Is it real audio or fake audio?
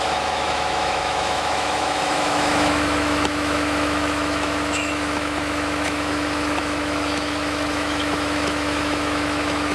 fake